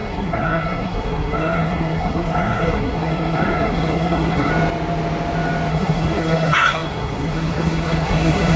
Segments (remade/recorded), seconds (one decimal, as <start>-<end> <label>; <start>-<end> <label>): 0.0-4.5 remade; 4.5-5.7 recorded; 5.7-8.6 remade